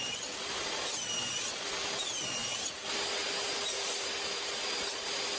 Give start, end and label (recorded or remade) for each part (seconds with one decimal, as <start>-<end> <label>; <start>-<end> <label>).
0.0-5.4 recorded